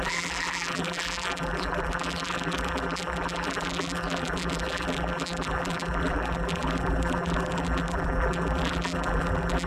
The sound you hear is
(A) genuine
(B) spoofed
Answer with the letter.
B